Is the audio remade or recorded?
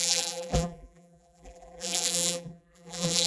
remade